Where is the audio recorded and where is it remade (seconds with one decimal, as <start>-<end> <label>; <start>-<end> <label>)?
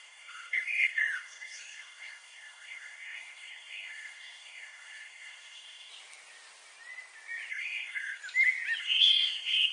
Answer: 0.0-5.9 remade; 5.9-7.5 recorded; 7.5-8.2 remade; 8.2-8.8 recorded; 8.8-9.7 remade